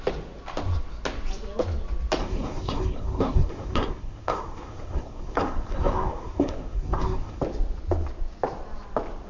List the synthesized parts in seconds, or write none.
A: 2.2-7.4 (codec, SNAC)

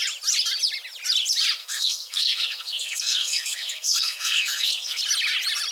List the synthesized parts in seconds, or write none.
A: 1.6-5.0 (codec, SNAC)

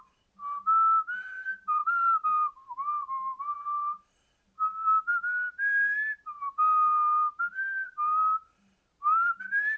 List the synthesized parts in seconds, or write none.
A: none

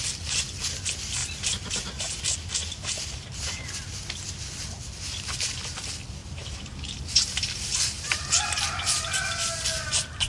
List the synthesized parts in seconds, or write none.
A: 1.2-2.2 (vocoder, BigVGAN v2); 2.6-3.6; 6.2-9.0